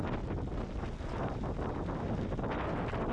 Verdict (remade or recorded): recorded